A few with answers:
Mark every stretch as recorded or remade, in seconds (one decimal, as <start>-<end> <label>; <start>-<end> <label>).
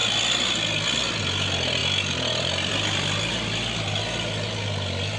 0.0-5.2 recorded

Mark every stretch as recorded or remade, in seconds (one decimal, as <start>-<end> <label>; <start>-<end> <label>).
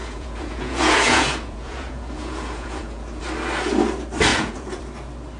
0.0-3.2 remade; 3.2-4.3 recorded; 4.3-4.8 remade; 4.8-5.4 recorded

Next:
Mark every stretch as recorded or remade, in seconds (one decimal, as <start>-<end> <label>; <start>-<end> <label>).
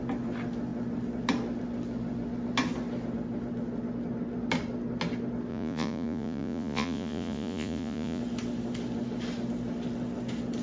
0.0-5.5 recorded; 5.5-8.2 remade; 8.2-10.6 recorded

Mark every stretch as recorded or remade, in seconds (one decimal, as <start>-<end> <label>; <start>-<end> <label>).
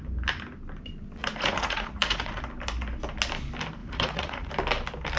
0.0-1.2 recorded; 1.2-2.4 remade; 2.4-3.8 recorded; 3.8-4.5 remade; 4.5-5.2 recorded